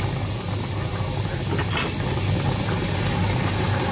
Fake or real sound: real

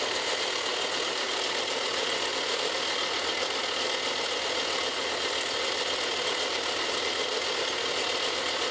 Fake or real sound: real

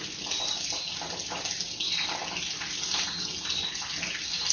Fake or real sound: real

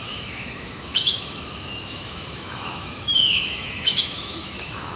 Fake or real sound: fake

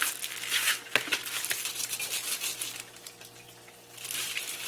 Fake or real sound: real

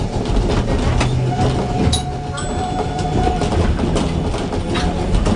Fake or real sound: real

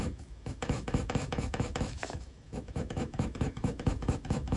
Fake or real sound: fake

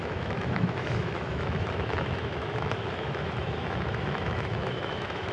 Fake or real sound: fake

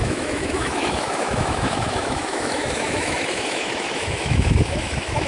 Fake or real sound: fake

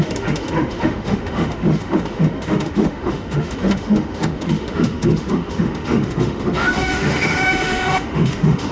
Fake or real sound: fake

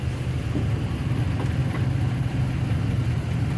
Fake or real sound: real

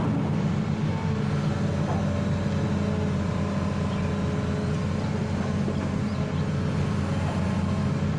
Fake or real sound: real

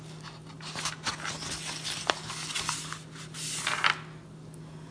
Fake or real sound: real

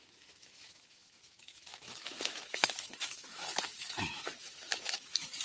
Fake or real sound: fake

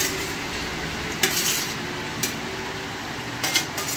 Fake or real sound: real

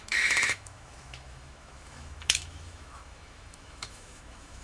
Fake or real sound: fake